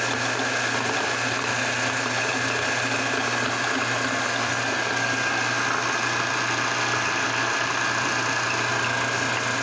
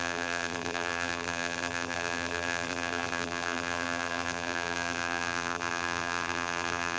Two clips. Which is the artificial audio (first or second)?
second